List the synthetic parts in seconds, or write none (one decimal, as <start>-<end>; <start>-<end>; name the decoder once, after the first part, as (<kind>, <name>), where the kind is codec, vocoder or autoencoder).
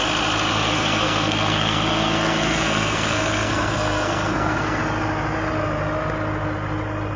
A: 0.5-4.8 (codec, SNAC)